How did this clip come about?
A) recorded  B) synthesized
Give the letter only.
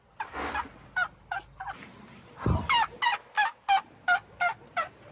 A